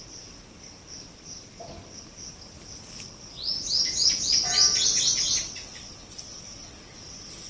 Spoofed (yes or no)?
no